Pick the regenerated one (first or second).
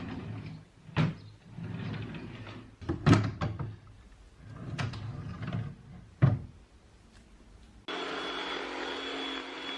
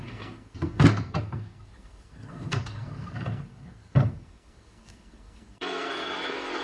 second